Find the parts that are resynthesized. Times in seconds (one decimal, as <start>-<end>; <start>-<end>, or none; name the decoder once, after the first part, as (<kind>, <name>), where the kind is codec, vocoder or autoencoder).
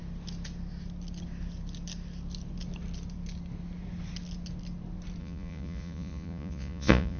5.2-7.2 (vocoder, Vocos)